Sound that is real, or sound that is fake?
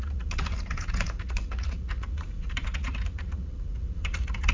fake